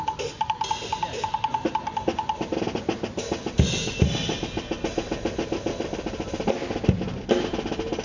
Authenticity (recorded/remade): recorded